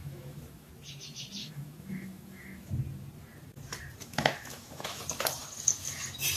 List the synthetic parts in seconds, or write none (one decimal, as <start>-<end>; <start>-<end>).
0.0-0.7; 1.4-2.7; 4.0-5.0